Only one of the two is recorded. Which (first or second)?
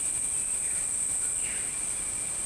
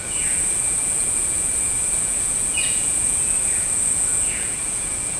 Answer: first